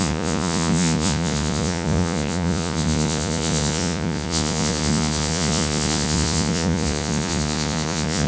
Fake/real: fake